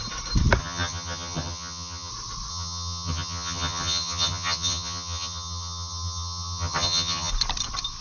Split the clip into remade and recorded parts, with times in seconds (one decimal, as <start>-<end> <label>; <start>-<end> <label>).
0.0-0.6 recorded; 0.6-2.1 remade; 2.1-2.5 recorded; 2.5-7.3 remade; 7.3-8.0 recorded